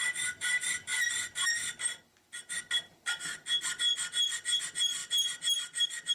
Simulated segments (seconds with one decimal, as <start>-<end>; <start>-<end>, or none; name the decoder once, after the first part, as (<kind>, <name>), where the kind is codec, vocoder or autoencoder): none